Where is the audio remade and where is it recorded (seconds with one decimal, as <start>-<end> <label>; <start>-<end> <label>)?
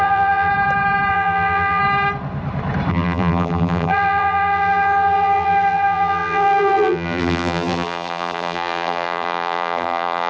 0.0-0.5 remade; 0.5-1.1 recorded; 1.1-1.8 remade; 1.8-2.9 recorded; 2.9-10.3 remade